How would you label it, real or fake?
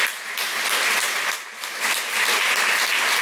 real